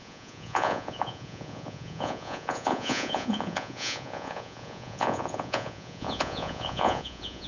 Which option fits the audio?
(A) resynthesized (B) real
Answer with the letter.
A